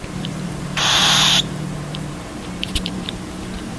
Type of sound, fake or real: fake